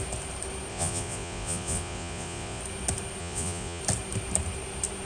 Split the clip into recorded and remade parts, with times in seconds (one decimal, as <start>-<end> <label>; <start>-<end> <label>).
0.0-0.7 recorded; 0.7-2.6 remade; 2.6-3.2 recorded; 3.2-3.8 remade; 3.8-5.0 recorded

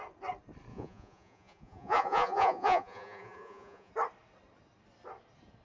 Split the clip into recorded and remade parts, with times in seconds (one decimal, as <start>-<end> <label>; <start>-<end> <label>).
0.0-0.7 recorded; 0.7-3.9 remade; 3.9-5.6 recorded

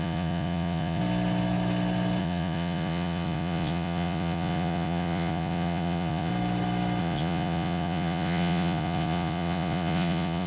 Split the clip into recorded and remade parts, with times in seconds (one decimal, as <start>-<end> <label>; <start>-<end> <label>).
0.0-1.0 remade; 1.0-2.2 recorded; 2.2-6.3 remade; 6.3-7.0 recorded; 7.0-10.5 remade